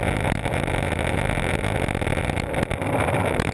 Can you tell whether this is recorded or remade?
recorded